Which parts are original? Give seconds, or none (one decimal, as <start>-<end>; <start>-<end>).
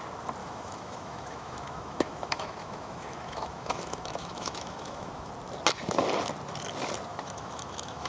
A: 0.0-0.4; 5.3-7.1